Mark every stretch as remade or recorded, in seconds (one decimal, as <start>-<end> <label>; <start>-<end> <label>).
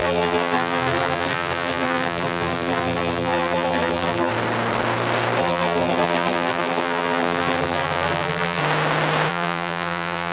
0.0-4.3 remade; 4.3-5.4 recorded; 5.4-8.6 remade; 8.6-9.3 recorded; 9.3-10.3 remade